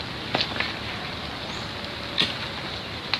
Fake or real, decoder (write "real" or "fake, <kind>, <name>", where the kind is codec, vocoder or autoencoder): real